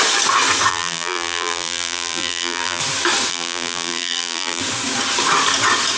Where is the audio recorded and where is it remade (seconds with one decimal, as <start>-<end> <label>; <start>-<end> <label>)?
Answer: 0.0-0.7 recorded; 0.7-2.8 remade; 2.8-3.3 recorded; 3.3-4.6 remade; 4.6-6.0 recorded